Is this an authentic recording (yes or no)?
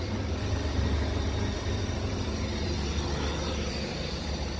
yes